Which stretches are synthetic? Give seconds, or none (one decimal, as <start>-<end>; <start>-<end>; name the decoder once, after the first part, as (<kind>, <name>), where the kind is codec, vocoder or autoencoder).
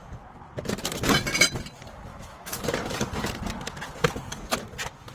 2.1-2.6 (autoencoder, DAC-VAE)